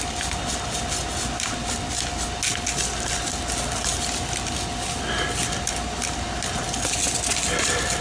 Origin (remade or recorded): recorded